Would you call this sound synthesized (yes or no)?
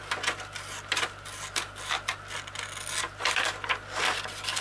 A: no